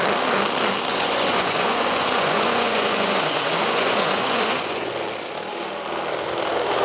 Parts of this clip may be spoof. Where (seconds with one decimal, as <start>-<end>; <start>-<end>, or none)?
0.9-4.9